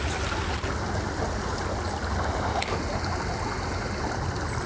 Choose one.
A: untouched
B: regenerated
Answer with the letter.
A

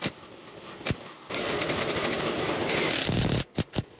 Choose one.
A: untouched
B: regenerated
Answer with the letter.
A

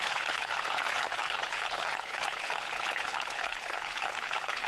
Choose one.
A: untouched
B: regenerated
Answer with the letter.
B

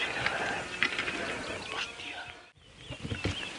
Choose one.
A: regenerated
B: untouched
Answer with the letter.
B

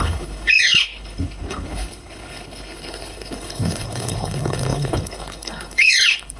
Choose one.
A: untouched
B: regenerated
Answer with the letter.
B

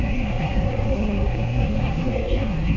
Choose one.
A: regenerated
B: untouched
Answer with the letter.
A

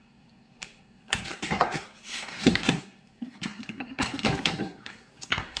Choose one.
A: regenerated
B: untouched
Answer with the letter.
A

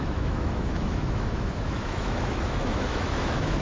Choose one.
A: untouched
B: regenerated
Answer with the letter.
B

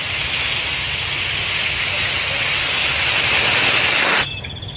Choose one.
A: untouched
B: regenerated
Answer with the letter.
A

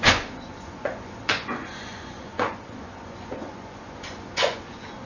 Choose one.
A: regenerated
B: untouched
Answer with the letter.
A